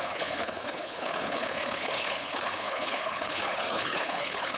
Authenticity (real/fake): fake